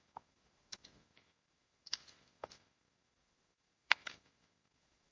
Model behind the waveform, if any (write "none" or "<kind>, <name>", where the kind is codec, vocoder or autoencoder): autoencoder, DAC-VAE